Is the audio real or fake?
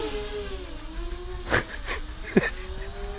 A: real